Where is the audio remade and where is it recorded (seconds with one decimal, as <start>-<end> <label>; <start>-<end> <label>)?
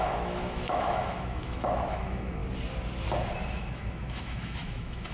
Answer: 0.0-2.4 remade; 2.4-3.5 recorded; 3.5-5.1 remade